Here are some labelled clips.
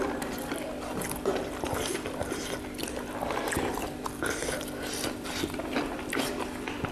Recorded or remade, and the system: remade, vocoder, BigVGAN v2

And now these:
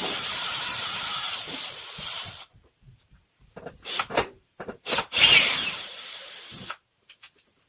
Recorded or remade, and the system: remade, vocoder, BigVGAN v2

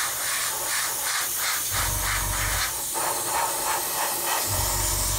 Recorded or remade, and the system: recorded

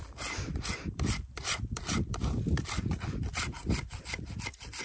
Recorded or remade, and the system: remade, vocoder, BigVGAN v2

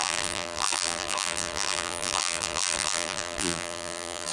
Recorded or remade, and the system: remade, vocoder, BigVGAN v2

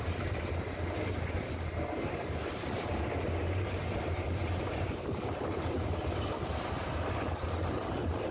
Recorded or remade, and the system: remade, vocoder, BigVGAN v2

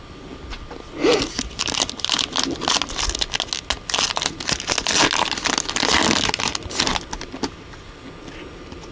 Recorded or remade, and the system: recorded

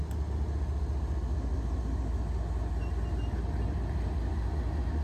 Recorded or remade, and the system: recorded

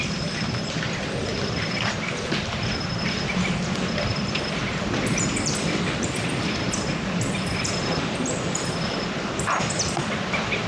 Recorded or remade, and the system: remade, vocoder, BigVGAN v2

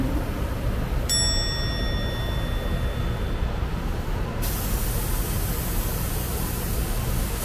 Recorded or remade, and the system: recorded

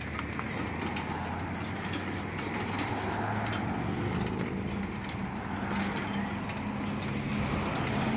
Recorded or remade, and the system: recorded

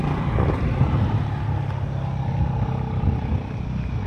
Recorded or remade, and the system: recorded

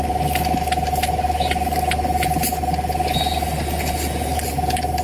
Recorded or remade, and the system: recorded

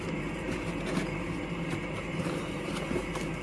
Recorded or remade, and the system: remade, vocoder, BigVGAN v2